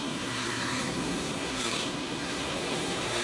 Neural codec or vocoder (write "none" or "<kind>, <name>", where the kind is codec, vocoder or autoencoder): codec, SNAC